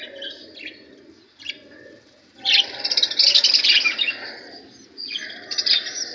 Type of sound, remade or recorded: recorded